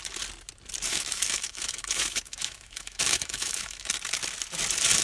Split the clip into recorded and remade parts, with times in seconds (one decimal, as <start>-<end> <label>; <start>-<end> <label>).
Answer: 0.0-0.9 recorded; 0.9-3.9 remade; 3.9-5.0 recorded